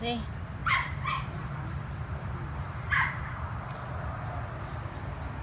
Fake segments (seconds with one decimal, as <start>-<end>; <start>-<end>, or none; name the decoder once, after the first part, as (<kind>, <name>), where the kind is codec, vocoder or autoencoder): 0.6-3.8 (vocoder, BigVGAN v2)